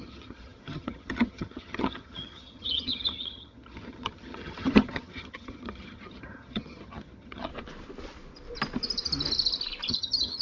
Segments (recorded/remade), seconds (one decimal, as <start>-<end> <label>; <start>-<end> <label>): 0.0-7.5 remade; 7.5-9.9 recorded; 9.9-10.4 remade